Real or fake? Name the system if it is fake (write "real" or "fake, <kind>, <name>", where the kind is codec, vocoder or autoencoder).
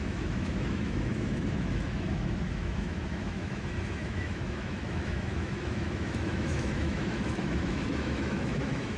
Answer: fake, autoencoder, DAC-VAE